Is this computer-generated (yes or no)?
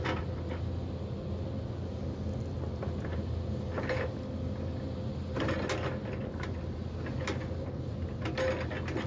no